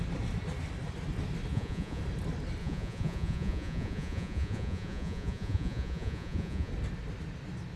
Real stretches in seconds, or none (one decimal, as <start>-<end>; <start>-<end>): 0.0-1.5; 2.0-2.6; 6.7-7.8